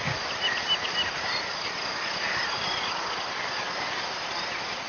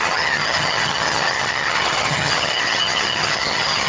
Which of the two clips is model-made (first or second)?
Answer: second